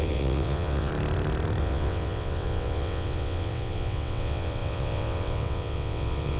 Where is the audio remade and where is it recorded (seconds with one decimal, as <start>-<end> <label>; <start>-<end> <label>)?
0.0-0.9 remade; 0.9-1.6 recorded; 1.6-6.4 remade

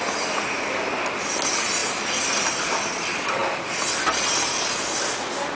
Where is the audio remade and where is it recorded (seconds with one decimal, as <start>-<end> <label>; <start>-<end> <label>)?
0.0-5.5 recorded